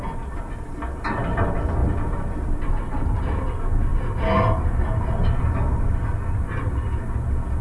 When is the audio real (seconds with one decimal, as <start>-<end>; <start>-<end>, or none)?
0.0-7.6

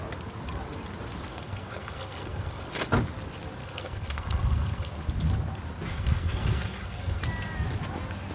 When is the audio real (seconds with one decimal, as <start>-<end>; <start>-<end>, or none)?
0.0-1.3; 2.7-3.6; 4.9-5.9; 7.2-8.3

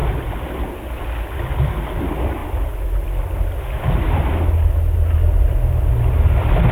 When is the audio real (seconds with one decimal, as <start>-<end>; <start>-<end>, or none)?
0.0-6.7

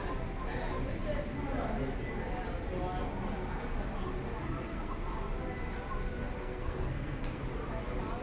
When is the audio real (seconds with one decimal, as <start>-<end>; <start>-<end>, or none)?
0.0-4.4; 5.0-6.4; 7.4-8.2

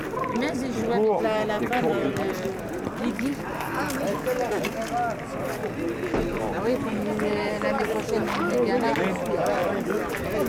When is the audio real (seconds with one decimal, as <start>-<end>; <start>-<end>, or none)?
0.0-10.5

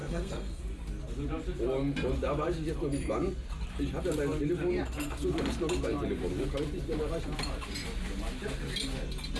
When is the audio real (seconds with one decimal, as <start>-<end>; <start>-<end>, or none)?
0.6-9.4

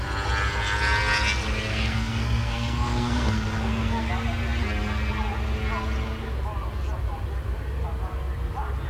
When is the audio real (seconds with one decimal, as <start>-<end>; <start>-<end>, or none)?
0.0-1.7; 4.1-8.9